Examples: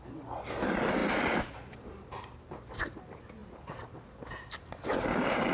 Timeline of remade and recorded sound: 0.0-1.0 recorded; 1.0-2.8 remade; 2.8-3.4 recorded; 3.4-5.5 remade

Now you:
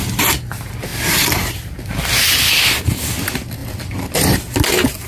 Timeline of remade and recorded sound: 0.0-5.1 recorded

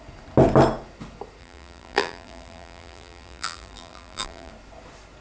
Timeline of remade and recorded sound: 0.0-1.4 recorded; 1.4-4.5 remade; 4.5-5.2 recorded

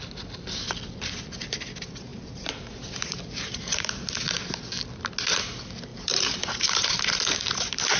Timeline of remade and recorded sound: 0.0-2.1 recorded; 2.1-3.9 remade; 3.9-5.9 recorded; 5.9-8.0 remade

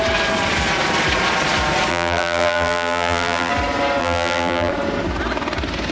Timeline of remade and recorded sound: 0.0-1.9 recorded; 1.9-3.5 remade; 3.5-4.0 recorded; 4.0-4.7 remade; 4.7-5.9 recorded

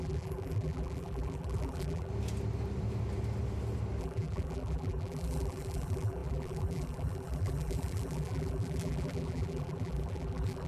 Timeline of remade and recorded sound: 0.0-2.1 remade; 2.1-4.0 recorded; 4.0-10.7 remade